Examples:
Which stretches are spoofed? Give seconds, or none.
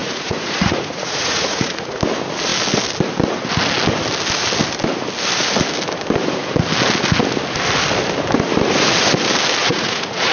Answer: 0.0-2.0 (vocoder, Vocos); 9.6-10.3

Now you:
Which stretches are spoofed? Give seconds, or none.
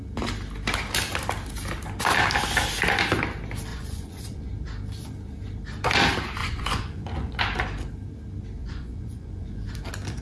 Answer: 3.7-4.5 (vocoder, Vocos); 6.4-7.4; 8.6-9.7